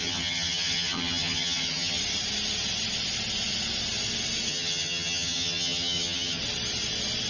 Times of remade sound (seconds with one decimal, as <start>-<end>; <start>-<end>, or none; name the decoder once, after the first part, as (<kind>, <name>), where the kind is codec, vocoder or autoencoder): 0.0-2.0 (vocoder, HiFi-GAN); 4.5-6.4